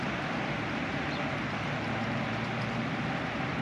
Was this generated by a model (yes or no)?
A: no